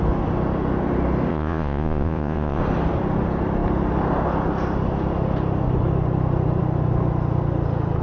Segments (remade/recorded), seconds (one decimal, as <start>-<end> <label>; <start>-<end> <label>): 0.0-1.3 recorded; 1.3-2.6 remade; 2.6-8.0 recorded